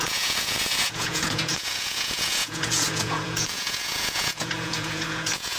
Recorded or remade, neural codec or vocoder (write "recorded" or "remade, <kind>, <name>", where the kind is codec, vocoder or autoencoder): remade, vocoder, Vocos